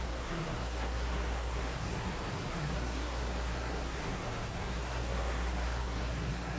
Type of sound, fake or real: fake